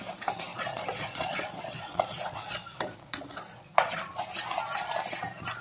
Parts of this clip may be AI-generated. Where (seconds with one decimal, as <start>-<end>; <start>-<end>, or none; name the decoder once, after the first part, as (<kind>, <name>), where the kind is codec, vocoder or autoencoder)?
0.5-3.9 (vocoder, Vocos)